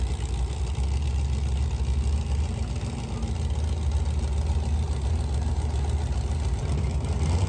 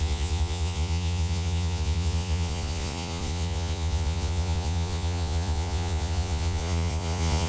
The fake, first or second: second